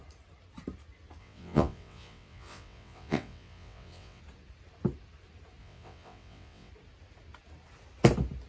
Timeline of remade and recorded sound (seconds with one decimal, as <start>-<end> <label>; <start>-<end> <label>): 0.0-1.2 recorded; 1.2-4.2 remade; 4.2-5.6 recorded; 5.6-6.7 remade; 6.7-8.5 recorded